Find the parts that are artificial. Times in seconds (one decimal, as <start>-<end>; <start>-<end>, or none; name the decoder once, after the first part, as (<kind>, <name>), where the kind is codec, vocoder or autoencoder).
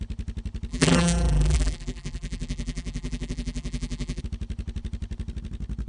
0.7-4.2 (vocoder, BigVGAN v2)